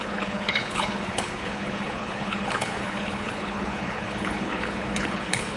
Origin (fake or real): fake